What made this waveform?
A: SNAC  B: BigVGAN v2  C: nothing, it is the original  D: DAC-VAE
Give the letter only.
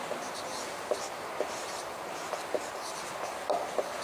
C